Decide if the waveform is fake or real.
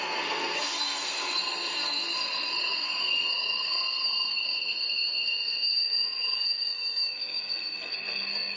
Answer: fake